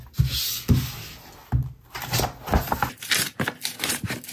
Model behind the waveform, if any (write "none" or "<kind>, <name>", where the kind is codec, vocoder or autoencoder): none